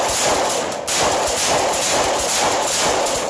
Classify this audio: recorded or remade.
recorded